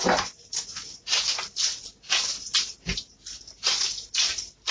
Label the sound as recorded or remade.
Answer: recorded